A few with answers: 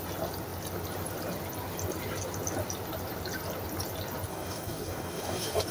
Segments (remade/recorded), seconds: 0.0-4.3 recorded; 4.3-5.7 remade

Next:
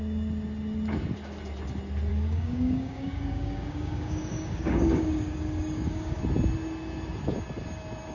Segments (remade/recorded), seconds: 0.0-2.1 recorded; 2.1-6.2 remade; 6.2-8.1 recorded

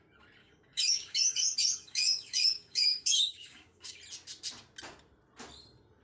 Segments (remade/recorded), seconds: 0.0-0.4 recorded; 0.4-4.0 remade; 4.0-6.0 recorded

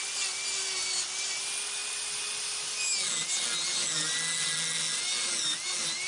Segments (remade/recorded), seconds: 0.0-6.1 recorded

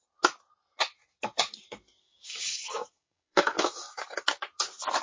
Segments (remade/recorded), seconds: 0.0-2.0 recorded; 2.0-4.2 remade; 4.2-5.0 recorded

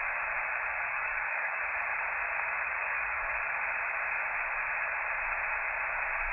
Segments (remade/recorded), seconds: 0.0-0.7 recorded; 0.7-1.6 remade; 1.6-2.8 recorded; 2.8-3.4 remade; 3.4-6.3 recorded